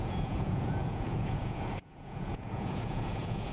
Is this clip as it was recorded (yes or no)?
no